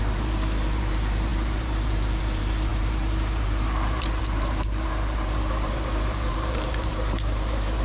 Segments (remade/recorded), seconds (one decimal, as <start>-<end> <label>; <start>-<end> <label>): 0.0-7.8 remade